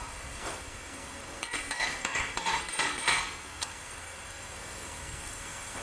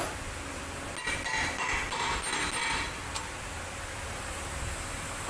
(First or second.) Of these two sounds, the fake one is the first